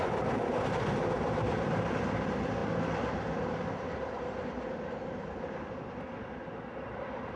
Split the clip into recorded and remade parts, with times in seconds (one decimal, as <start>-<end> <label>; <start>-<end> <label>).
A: 0.0-7.4 recorded